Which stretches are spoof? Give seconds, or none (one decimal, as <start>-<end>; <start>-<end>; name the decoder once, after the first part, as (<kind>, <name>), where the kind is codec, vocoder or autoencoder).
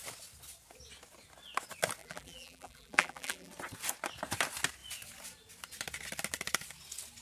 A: 2.0-3.5 (vocoder, BigVGAN v2)